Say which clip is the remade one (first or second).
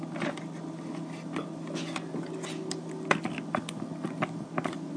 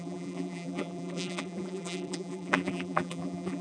second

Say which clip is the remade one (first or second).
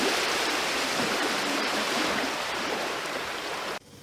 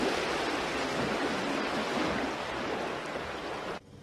first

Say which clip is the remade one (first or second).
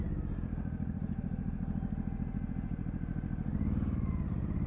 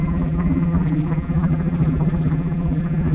second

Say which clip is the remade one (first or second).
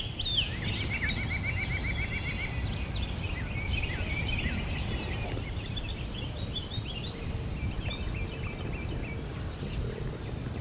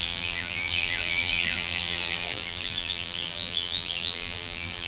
second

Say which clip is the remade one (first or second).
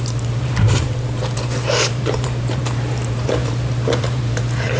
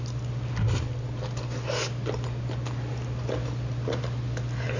first